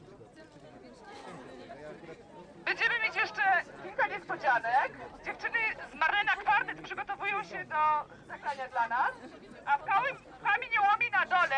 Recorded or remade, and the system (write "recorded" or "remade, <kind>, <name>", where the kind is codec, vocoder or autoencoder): recorded